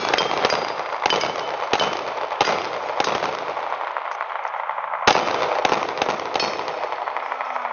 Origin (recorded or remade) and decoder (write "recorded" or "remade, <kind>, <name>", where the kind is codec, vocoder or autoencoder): recorded